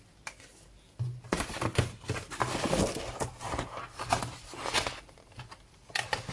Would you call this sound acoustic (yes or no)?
yes